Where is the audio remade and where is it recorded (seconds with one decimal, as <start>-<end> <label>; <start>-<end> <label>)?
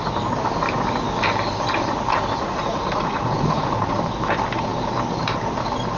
0.0-2.3 recorded; 2.3-4.0 remade; 4.0-6.0 recorded